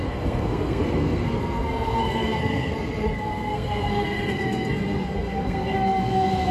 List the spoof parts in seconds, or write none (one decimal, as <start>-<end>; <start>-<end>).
0.0-6.5